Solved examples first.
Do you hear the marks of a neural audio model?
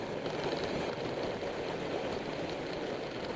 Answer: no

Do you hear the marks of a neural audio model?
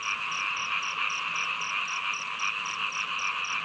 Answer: no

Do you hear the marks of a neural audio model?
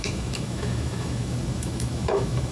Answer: yes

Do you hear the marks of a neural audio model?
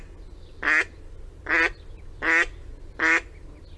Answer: no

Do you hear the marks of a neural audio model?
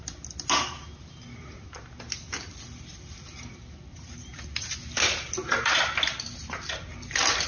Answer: no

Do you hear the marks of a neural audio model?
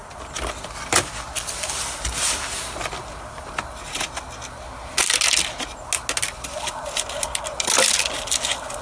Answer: no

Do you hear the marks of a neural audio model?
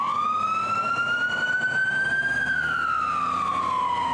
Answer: no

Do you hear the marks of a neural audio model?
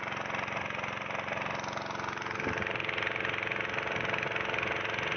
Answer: no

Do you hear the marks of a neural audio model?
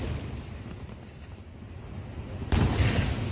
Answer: no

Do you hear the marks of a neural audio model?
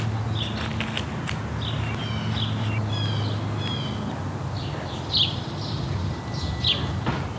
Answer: no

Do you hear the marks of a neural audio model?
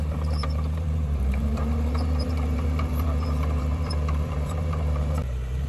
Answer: yes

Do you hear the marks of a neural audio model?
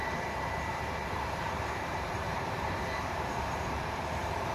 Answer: yes